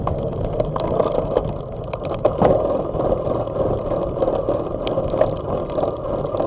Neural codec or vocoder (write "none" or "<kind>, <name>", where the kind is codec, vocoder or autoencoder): none